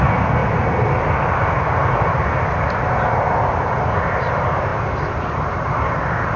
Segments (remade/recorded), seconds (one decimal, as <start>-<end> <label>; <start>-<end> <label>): 0.0-6.4 recorded